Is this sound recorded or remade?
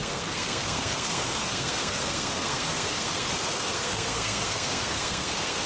remade